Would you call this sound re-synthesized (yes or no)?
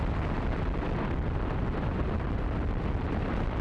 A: no